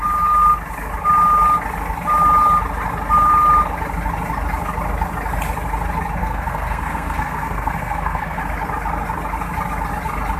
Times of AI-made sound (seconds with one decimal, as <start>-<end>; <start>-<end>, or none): 6.2-8.4